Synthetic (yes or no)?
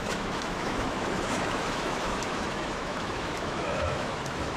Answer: yes